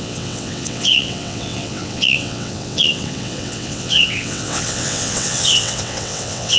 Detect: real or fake fake